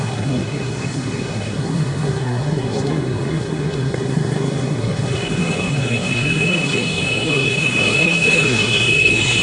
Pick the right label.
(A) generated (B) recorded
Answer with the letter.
A